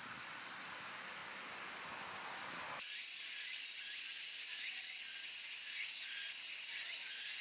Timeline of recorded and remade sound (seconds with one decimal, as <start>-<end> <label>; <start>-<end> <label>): 0.0-0.7 remade; 0.7-7.4 recorded